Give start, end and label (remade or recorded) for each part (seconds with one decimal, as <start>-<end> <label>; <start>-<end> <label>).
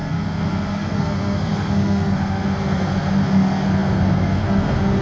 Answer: 0.0-5.0 remade